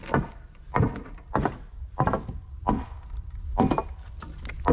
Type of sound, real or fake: real